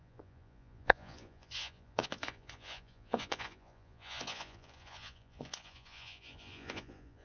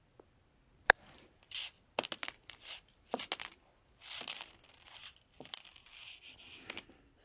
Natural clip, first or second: second